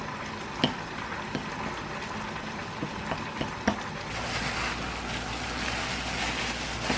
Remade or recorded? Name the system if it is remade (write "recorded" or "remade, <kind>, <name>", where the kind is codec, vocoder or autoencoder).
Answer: recorded